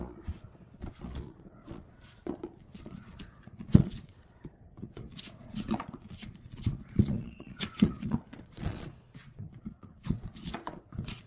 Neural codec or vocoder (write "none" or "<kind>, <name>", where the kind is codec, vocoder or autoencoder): vocoder, Vocos